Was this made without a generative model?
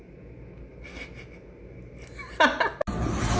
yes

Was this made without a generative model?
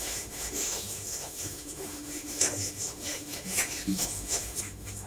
no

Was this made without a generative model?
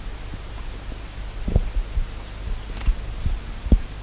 yes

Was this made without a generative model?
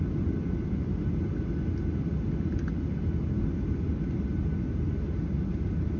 yes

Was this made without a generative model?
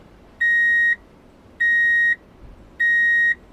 yes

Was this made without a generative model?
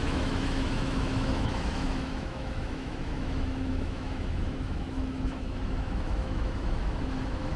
no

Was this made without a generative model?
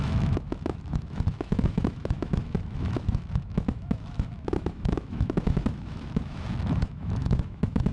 no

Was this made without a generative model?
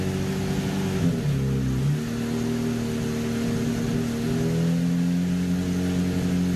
yes